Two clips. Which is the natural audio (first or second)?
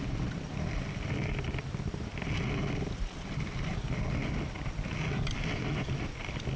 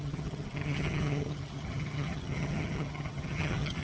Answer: first